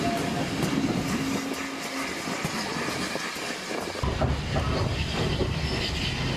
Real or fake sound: real